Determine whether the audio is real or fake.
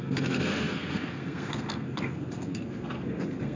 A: fake